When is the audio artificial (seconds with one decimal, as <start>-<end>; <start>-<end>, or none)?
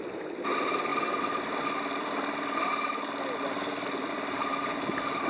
4.5-5.3